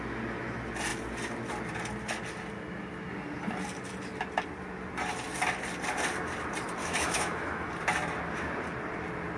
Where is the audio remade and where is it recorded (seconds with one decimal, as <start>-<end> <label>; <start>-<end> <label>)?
0.0-6.8 recorded; 6.8-7.7 remade; 7.7-9.4 recorded